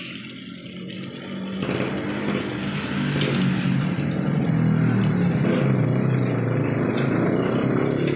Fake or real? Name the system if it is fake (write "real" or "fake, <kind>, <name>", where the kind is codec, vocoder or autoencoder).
real